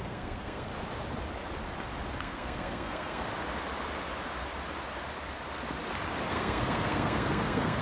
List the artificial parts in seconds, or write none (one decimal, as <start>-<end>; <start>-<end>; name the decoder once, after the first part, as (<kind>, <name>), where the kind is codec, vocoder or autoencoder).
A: 0.0-0.7 (codec, SNAC); 2.2-3.3; 6.3-7.8